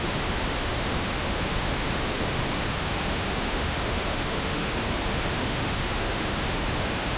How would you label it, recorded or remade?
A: remade